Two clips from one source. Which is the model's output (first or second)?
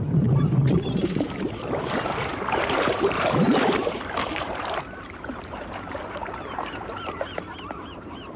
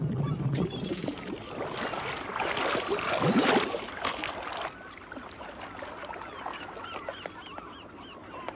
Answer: first